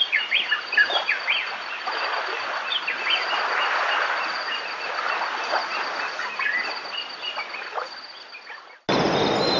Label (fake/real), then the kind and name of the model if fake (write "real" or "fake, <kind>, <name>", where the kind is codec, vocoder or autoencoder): real